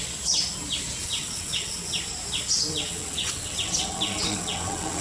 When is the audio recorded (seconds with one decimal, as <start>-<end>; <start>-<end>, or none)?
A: 0.0-1.0; 2.0-2.7